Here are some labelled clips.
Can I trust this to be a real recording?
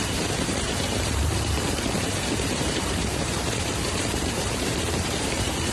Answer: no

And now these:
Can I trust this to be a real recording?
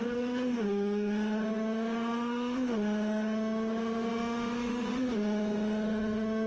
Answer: no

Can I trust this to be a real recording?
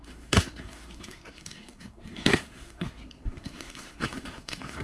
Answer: no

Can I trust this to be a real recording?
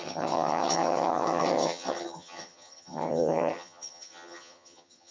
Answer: no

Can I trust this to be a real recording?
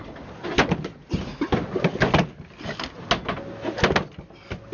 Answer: yes